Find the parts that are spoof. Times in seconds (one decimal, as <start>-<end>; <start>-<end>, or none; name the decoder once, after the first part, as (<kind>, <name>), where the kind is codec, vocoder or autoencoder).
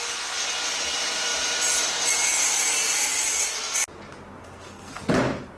4.4-5.0 (codec, SNAC)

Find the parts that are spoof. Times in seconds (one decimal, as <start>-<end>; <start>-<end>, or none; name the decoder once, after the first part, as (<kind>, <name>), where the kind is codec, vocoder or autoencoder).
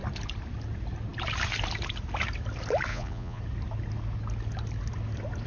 2.9-3.4 (vocoder, Vocos)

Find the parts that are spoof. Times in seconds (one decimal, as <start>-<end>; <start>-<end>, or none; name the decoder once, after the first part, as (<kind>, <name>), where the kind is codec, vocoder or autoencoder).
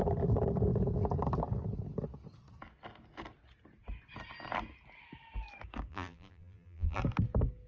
5.9-7.0 (vocoder, BigVGAN v2)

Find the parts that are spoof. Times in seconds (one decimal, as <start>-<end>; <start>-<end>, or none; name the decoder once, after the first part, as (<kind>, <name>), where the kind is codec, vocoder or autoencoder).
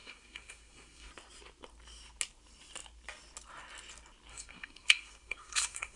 0.0-1.1 (codec, SNAC); 4.3-6.0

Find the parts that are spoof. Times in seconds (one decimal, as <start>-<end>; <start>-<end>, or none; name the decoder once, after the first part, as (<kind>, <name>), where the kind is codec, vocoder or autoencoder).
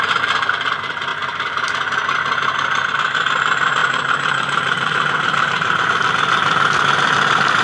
3.8-5.9 (vocoder, BigVGAN v2)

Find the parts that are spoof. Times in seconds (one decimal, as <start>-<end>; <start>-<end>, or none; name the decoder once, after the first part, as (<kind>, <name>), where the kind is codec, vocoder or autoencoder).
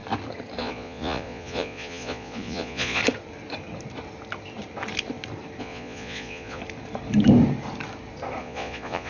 0.6-3.0 (vocoder, Vocos); 5.6-6.6; 8.4-9.1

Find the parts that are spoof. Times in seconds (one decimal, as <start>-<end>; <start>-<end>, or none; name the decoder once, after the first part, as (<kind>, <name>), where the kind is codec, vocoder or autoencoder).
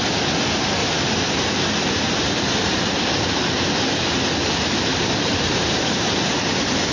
0.8-4.0 (vocoder, BigVGAN v2); 4.9-6.9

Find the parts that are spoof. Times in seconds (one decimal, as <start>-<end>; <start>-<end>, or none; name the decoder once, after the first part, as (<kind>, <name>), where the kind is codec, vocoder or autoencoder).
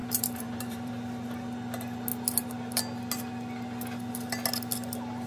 0.0-0.9 (vocoder, BigVGAN v2)